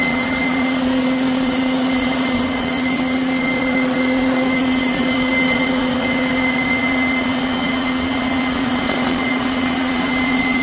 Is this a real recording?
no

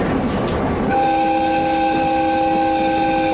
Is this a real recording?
yes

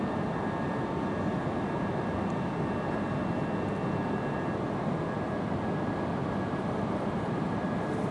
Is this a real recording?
yes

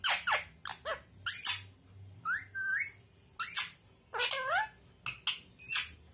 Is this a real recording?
yes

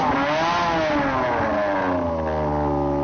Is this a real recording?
yes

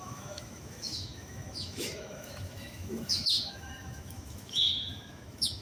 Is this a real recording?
no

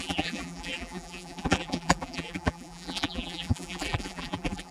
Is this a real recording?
no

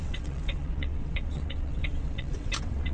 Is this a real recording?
no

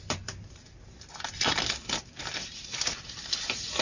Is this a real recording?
no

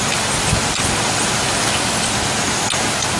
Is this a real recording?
yes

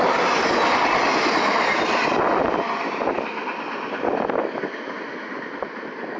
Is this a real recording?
yes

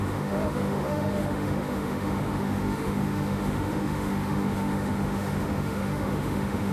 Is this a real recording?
no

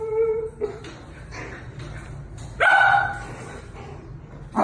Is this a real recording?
yes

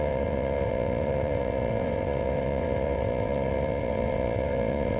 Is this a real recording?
no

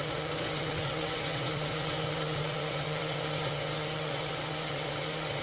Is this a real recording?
no